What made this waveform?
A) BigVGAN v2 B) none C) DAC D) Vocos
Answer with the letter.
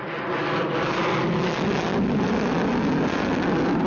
B